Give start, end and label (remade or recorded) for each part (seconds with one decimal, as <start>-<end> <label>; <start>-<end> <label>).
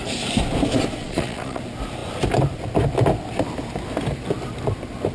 0.0-1.0 recorded; 1.0-1.6 remade; 1.6-5.1 recorded